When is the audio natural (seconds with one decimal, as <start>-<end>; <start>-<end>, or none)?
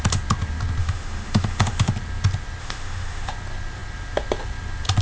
0.0-0.8; 1.9-2.6; 3.3-5.0